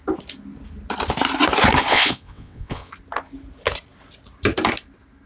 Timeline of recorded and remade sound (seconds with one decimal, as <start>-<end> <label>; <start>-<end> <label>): 0.0-1.9 recorded; 1.9-2.9 remade; 2.9-5.3 recorded